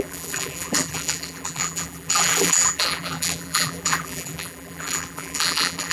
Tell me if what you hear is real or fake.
fake